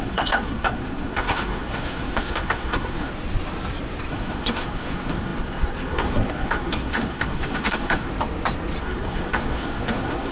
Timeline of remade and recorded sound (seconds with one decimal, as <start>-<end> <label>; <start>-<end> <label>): 0.0-3.1 remade; 3.1-4.1 recorded; 4.1-8.1 remade; 8.1-8.8 recorded; 8.8-10.3 remade